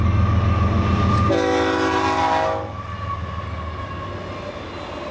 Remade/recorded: recorded